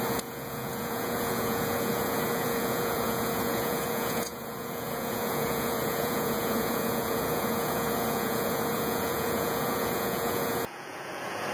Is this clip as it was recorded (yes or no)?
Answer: no